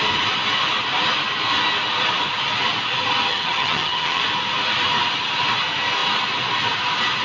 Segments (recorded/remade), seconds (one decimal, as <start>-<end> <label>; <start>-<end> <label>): 0.0-3.3 recorded; 3.3-4.2 remade; 4.2-7.2 recorded